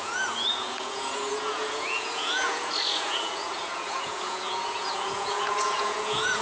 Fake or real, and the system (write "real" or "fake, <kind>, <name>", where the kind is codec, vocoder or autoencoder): fake, vocoder, Vocos